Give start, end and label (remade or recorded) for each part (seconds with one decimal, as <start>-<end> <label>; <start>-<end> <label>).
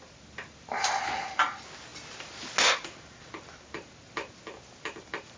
0.0-5.4 recorded